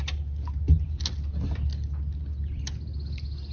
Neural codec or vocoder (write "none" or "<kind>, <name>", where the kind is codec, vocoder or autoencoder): none